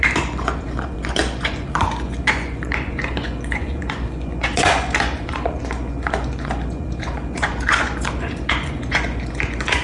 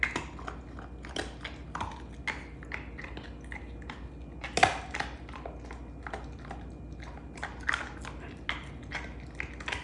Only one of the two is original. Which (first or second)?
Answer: second